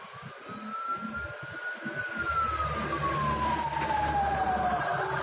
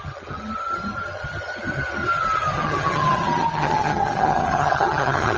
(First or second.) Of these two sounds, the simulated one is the second